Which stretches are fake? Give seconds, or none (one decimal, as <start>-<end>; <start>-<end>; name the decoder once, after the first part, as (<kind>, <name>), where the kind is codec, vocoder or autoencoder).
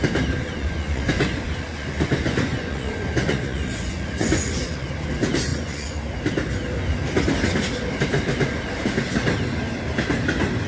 0.4-4.9 (vocoder, Vocos); 5.5-6.0